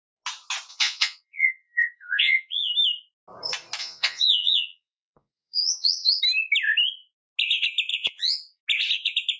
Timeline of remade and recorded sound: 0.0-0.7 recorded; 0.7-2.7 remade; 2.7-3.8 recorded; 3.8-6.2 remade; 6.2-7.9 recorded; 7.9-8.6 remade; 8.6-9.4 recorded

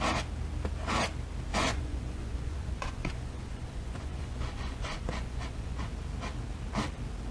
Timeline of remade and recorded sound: 0.0-1.5 recorded; 1.5-5.9 remade; 5.9-7.3 recorded

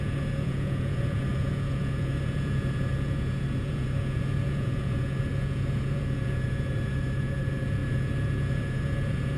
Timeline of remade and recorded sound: 0.0-9.4 remade